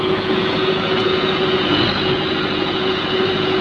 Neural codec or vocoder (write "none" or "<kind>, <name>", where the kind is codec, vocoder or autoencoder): vocoder, Vocos